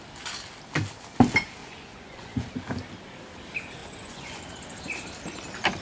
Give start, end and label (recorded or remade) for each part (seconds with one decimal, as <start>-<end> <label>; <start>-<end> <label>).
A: 0.0-1.6 recorded; 1.6-2.5 remade; 2.5-3.8 recorded; 3.8-4.4 remade; 4.4-5.8 recorded